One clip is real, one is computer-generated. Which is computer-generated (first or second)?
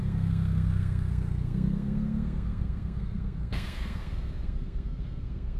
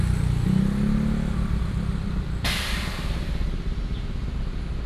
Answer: first